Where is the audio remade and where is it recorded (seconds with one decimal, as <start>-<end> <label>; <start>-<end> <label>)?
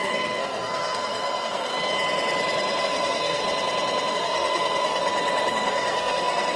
0.0-1.7 remade; 1.7-2.8 recorded; 2.8-3.4 remade; 3.4-4.1 recorded; 4.1-5.0 remade; 5.0-5.5 recorded; 5.5-6.6 remade